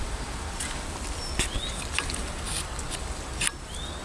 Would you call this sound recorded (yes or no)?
yes